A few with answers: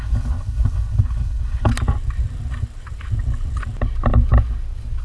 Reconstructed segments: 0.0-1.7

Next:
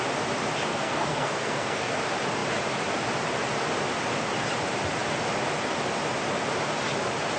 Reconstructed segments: 0.7-1.9

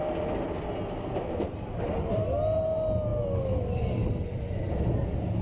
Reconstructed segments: none

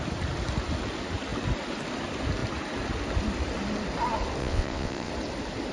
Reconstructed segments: 4.4-5.1

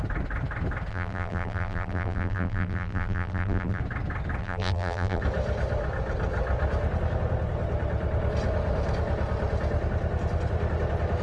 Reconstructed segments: 0.9-3.8; 4.4-5.2